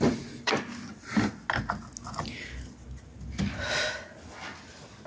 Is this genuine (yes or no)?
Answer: yes